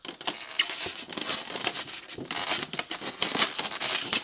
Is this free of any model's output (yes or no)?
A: yes